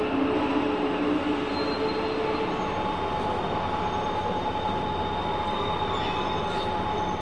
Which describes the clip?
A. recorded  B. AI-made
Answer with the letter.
A